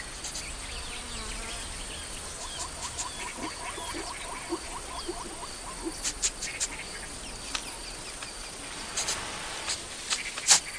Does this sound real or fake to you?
real